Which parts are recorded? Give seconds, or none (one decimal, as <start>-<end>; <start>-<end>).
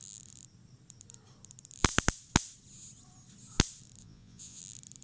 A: 0.0-4.0; 4.6-5.0